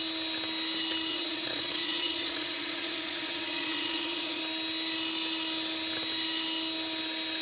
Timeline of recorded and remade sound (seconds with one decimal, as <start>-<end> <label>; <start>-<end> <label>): 0.0-1.1 recorded; 1.1-4.4 remade; 4.4-7.4 recorded